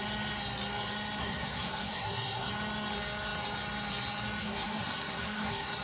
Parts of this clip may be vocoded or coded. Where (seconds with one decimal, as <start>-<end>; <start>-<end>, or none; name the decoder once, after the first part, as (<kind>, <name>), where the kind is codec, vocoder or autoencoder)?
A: 1.2-2.5 (codec, SNAC); 4.4-5.8